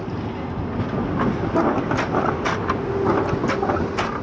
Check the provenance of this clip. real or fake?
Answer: real